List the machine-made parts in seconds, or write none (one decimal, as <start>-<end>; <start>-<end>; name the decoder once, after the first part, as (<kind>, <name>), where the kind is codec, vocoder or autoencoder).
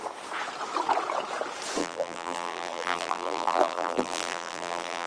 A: 1.8-5.1 (vocoder, BigVGAN v2)